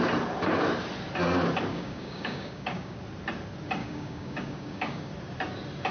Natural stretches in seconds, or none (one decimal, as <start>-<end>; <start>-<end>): 0.0-1.7; 3.0-3.8; 5.1-5.9